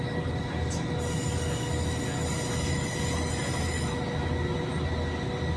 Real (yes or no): yes